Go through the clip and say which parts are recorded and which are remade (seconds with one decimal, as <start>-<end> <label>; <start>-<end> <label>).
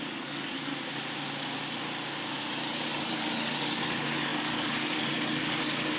0.0-0.7 remade; 0.7-2.4 recorded; 2.4-6.0 remade